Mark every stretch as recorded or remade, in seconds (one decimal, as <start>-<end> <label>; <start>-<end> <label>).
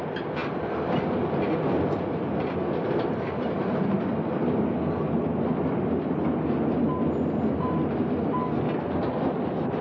0.0-9.8 recorded